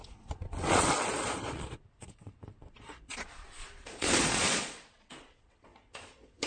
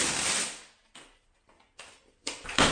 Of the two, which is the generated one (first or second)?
first